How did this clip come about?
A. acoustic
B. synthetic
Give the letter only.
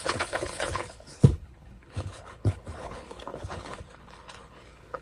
B